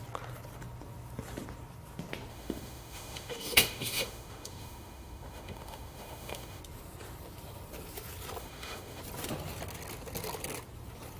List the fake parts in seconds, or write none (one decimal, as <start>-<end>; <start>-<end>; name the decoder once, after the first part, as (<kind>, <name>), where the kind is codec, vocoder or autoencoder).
2.3-6.6 (autoencoder, DAC-VAE); 8.4-9.0